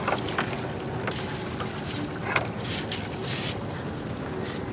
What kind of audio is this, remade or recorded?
recorded